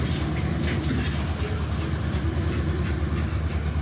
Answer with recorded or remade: recorded